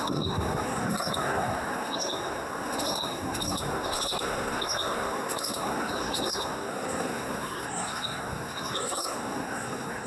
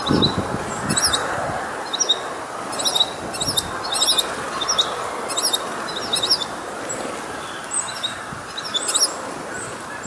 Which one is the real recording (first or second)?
second